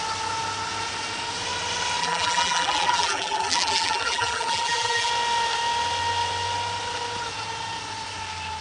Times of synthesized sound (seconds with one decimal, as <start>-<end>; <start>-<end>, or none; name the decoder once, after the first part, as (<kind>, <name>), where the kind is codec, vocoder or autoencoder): 2.0-5.1 (vocoder, BigVGAN v2)